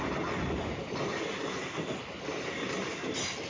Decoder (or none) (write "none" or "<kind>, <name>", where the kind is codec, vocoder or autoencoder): none